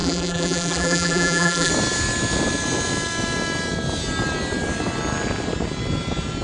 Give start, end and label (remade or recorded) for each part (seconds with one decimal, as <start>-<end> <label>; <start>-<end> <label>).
0.0-1.7 remade; 1.7-6.4 recorded

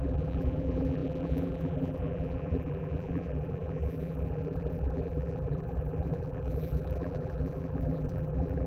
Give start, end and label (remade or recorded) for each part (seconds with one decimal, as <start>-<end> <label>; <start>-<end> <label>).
0.0-8.7 remade

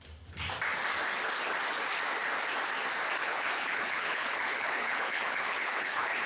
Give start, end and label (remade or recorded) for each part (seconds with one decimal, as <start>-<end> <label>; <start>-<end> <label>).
0.0-3.2 recorded; 3.2-6.3 remade

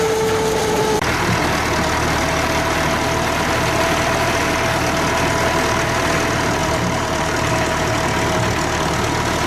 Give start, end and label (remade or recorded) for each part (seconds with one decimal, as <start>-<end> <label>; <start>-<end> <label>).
0.0-0.6 recorded; 0.6-1.4 remade; 1.4-6.6 recorded; 6.6-7.5 remade; 7.5-9.5 recorded

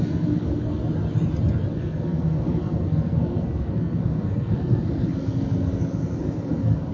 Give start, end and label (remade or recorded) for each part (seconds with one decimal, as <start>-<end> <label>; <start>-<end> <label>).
0.0-0.8 remade; 0.8-1.7 recorded; 1.7-6.9 remade

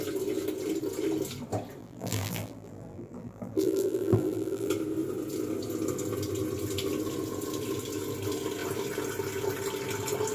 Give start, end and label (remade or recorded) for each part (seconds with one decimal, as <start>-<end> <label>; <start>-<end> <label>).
0.0-1.8 recorded; 1.8-4.7 remade; 4.7-10.3 recorded